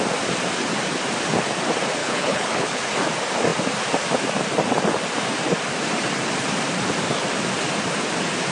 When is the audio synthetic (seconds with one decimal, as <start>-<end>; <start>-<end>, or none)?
2.0-2.8